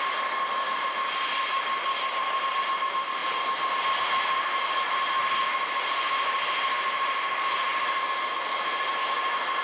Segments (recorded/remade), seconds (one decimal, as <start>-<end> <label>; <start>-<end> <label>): 0.0-7.7 remade; 7.7-8.6 recorded; 8.6-9.6 remade

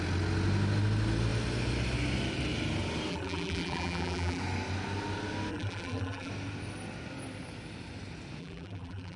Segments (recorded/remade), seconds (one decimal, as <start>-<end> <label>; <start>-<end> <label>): 0.0-3.1 recorded; 3.1-4.4 remade; 4.4-5.5 recorded; 5.5-6.3 remade; 6.3-8.4 recorded; 8.4-9.2 remade

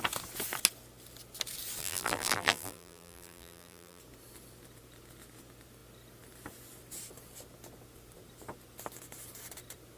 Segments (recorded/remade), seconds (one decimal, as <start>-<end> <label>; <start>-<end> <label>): 0.0-1.8 recorded; 1.8-4.0 remade; 4.0-10.0 recorded

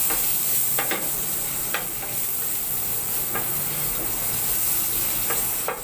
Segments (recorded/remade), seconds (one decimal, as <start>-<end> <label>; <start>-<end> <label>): 0.0-3.5 remade; 3.5-5.8 recorded

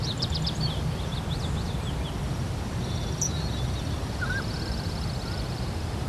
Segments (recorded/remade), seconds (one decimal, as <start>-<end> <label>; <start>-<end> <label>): 0.0-1.1 remade; 1.1-2.3 recorded; 2.3-6.1 remade

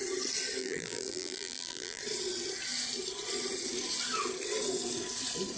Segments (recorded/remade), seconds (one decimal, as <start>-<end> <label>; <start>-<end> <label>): 0.0-0.6 recorded; 0.6-2.0 remade; 2.0-5.6 recorded